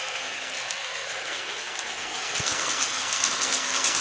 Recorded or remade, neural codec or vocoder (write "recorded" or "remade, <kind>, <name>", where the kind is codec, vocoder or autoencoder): remade, codec, SNAC